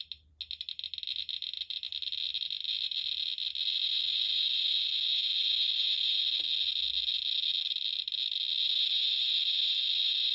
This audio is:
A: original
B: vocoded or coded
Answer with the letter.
A